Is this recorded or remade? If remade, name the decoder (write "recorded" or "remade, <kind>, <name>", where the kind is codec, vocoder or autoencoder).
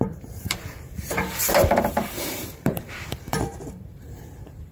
remade, vocoder, BigVGAN v2